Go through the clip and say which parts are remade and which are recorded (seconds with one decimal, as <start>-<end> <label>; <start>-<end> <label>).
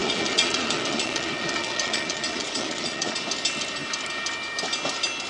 0.0-3.2 remade; 3.2-5.3 recorded